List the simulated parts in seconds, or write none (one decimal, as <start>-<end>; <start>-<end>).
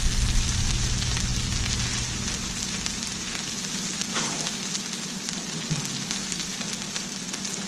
none